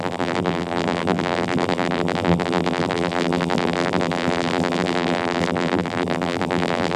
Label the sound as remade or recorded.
remade